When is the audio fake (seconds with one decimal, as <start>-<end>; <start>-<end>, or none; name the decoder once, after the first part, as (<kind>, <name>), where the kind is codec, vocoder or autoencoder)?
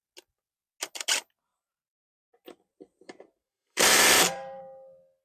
1.5-4.6 (vocoder, BigVGAN v2)